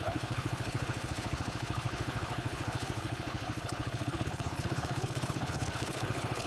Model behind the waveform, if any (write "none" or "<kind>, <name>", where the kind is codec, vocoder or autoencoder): codec, HILCodec